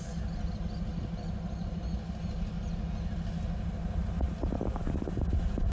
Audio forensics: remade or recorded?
recorded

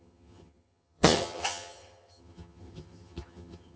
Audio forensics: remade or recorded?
remade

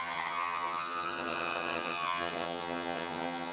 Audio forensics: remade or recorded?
remade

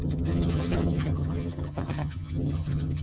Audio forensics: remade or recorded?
remade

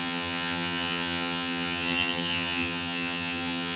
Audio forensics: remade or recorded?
remade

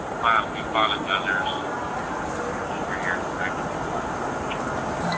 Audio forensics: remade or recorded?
recorded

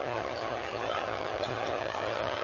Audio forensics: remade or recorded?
remade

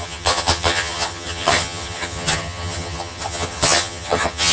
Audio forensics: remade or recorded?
remade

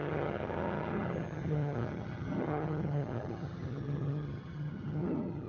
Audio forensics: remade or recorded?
remade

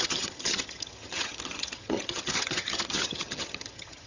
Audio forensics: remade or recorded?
remade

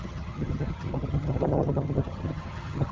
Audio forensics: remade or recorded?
remade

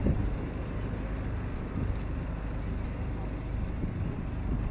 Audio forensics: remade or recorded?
recorded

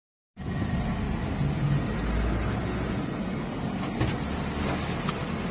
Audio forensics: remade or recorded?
recorded